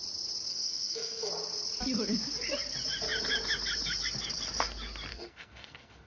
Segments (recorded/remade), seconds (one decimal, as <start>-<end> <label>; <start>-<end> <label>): 0.0-0.5 recorded; 0.5-1.3 remade; 1.3-5.1 recorded; 5.1-6.1 remade